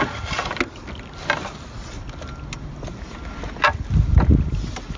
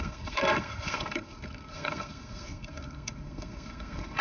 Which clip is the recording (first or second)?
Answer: first